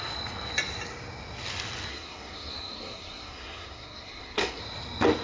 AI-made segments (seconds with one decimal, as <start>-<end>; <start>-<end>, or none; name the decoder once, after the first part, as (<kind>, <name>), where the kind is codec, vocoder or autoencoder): 1.9-4.6 (codec, SNAC)